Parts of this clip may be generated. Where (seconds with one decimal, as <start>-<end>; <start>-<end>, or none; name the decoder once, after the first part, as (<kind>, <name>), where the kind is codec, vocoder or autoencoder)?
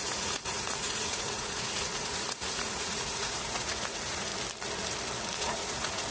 0.0-4.3 (vocoder, Vocos); 5.4-6.1